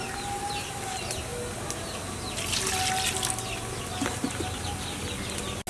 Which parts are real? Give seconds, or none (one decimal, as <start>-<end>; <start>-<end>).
0.0-5.7